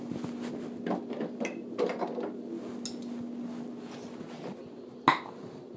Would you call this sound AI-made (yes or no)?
no